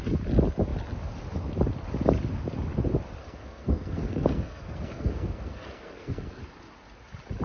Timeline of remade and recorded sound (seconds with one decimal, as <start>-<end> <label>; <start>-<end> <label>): 0.0-3.2 recorded; 3.2-6.4 remade; 6.4-7.4 recorded